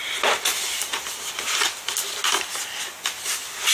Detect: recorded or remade recorded